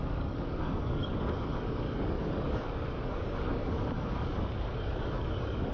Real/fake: fake